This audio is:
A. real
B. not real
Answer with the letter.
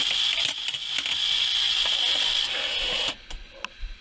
A